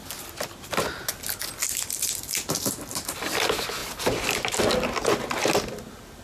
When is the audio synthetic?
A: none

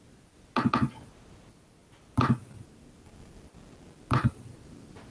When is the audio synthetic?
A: none

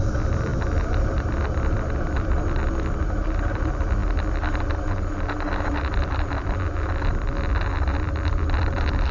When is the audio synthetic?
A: none

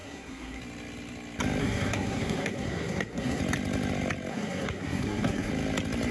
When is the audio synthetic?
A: 0.0-0.6 (codec, SNAC); 1.6-3.4; 4.3-5.5

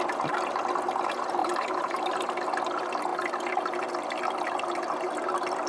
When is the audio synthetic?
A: 1.4-2.3 (vocoder, BigVGAN v2)

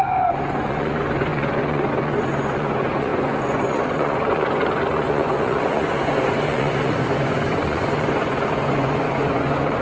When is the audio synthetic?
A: 0.0-9.8 (vocoder, Vocos)

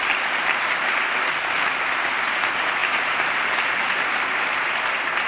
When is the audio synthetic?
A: none

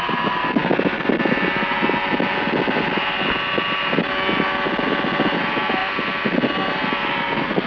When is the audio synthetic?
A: none